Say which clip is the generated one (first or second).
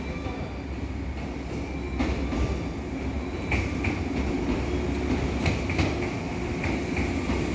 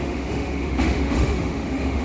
second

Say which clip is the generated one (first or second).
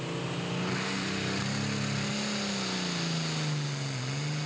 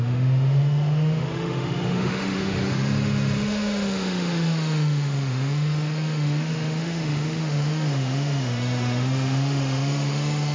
second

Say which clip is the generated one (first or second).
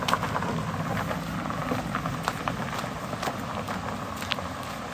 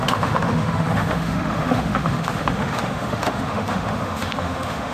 second